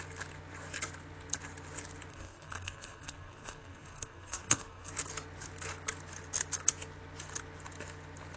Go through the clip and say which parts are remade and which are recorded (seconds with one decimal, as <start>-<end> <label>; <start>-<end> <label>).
0.0-2.1 recorded; 2.1-4.9 remade; 4.9-8.4 recorded